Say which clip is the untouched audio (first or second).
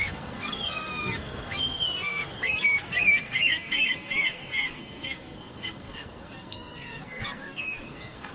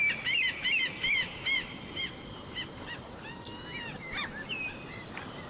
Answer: second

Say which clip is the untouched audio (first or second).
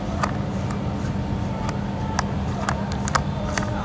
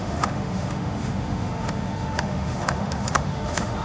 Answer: first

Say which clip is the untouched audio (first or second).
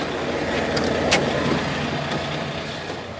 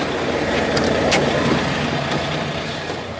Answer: first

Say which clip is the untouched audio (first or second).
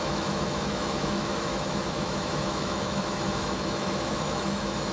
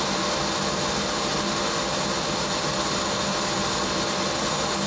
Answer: second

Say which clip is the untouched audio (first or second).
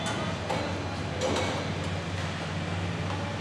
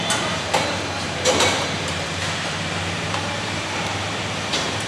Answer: first